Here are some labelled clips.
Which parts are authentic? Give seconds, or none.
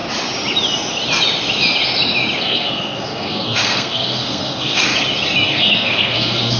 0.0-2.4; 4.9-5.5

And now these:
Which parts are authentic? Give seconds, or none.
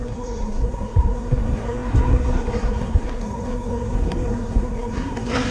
none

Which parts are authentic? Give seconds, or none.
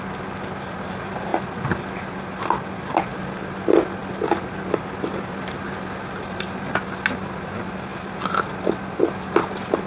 0.0-9.9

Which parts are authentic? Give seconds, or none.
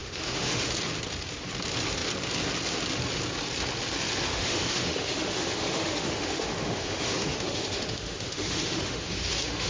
0.7-4.3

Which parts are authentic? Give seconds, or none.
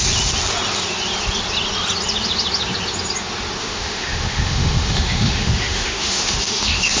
0.0-3.6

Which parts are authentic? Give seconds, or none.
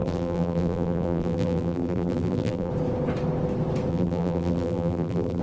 2.7-3.9